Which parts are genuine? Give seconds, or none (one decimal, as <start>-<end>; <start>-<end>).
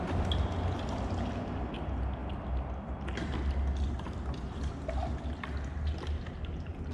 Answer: 0.0-6.9